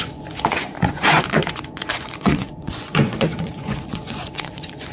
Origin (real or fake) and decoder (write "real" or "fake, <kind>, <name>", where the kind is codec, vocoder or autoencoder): fake, vocoder, Vocos